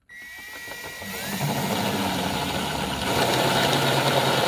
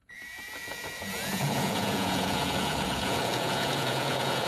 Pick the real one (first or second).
first